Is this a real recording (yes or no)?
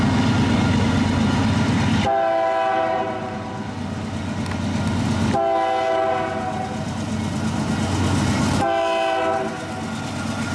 yes